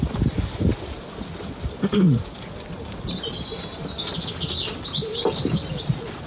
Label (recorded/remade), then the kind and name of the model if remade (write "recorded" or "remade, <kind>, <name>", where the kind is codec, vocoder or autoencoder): recorded